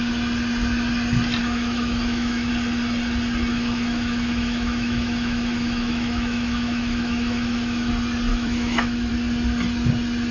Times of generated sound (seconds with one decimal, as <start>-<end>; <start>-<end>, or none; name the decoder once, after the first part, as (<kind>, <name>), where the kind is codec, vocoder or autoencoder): 1.4-2.5 (autoencoder, DAC-VAE); 3.5-7.9; 8.3-9.1